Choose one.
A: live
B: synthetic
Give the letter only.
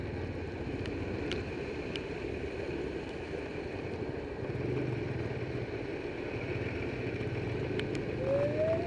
A